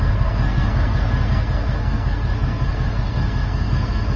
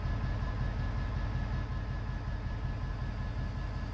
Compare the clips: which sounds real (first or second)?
second